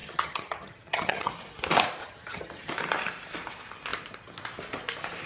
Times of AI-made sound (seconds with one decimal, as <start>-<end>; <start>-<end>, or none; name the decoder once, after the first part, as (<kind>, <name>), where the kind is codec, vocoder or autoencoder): 0.0-1.3 (vocoder, HiFi-GAN); 2.0-2.7